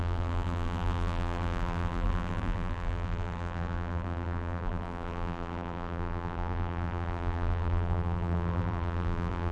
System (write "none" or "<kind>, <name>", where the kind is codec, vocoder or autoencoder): vocoder, BigVGAN v2